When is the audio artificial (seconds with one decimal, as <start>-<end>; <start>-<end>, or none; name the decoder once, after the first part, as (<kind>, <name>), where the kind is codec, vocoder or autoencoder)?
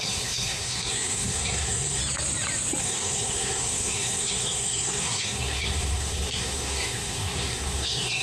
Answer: 0.0-2.0 (codec, SNAC); 2.8-8.2